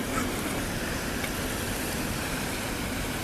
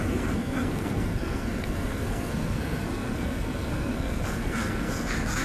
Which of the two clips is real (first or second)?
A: first